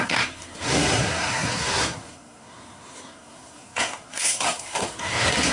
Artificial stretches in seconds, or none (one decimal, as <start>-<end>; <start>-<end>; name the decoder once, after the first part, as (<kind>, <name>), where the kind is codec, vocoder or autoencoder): 0.0-5.5 (codec, SNAC)